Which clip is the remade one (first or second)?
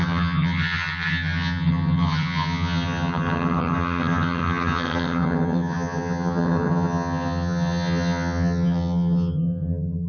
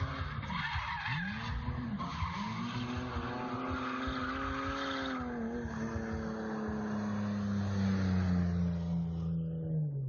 first